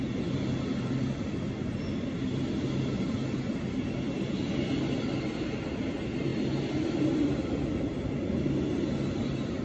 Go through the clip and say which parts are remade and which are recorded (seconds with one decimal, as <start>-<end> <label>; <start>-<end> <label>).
0.0-9.6 recorded